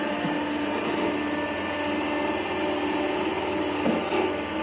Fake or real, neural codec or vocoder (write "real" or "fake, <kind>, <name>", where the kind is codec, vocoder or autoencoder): real